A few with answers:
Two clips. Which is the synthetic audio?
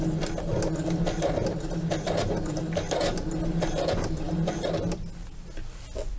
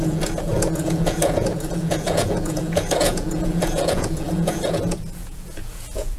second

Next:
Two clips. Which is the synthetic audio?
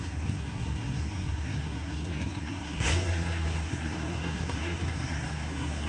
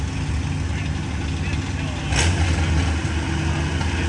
first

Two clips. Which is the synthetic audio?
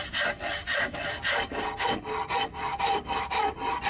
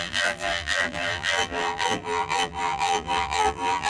second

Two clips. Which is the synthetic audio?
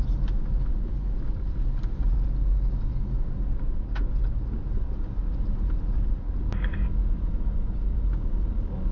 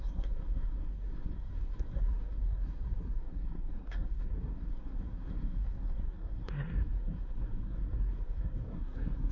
second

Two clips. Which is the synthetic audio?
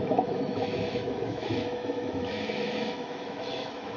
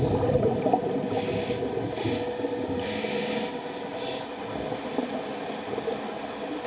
first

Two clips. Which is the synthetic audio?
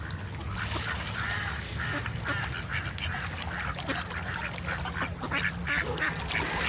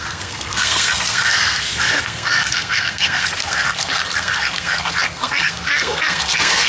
second